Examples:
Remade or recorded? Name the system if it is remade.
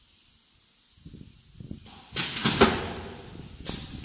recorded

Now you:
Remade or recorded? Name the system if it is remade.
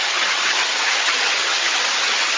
remade, vocoder, HiFi-GAN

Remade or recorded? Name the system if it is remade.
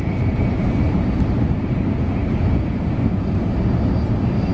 remade, vocoder, BigVGAN v2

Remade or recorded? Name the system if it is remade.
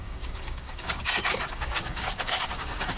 remade, codec, DAC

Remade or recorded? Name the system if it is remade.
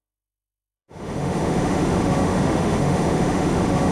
remade, autoencoder, DAC-VAE